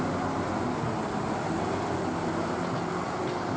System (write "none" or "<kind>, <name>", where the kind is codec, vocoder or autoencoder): none